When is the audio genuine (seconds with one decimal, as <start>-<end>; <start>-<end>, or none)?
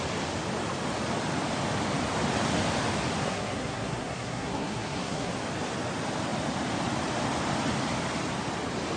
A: 0.0-3.2; 5.3-9.0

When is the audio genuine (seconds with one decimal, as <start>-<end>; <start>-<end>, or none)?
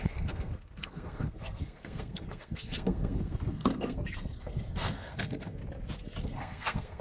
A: 5.6-6.2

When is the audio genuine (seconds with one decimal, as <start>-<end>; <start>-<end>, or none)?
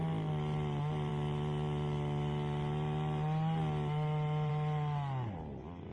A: 0.0-5.9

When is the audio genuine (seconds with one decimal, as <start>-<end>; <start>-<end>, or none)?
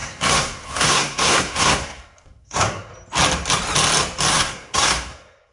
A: 2.9-4.3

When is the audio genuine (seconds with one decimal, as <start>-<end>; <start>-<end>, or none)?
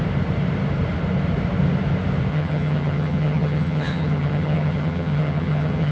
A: 0.0-2.3